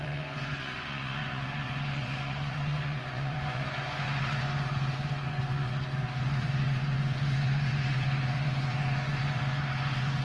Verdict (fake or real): fake